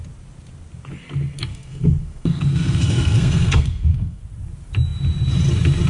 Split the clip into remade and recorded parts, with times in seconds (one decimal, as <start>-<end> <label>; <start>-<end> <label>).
0.0-1.5 recorded; 1.5-4.2 remade; 4.2-5.9 recorded